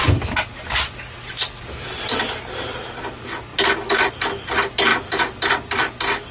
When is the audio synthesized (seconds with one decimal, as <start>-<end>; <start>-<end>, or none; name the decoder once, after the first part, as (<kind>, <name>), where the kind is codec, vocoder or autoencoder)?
none